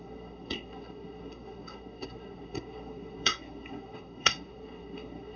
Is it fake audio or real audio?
fake